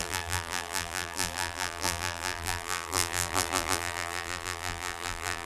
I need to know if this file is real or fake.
fake